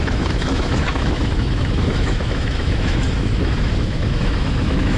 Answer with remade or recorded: remade